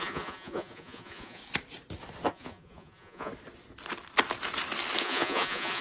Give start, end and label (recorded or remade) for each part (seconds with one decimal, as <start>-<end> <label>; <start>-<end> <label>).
0.0-1.4 remade; 1.4-2.3 recorded; 2.3-3.3 remade; 3.3-5.0 recorded; 5.0-5.8 remade